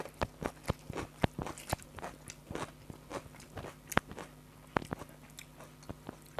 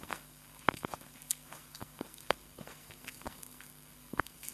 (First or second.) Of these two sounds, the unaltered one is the first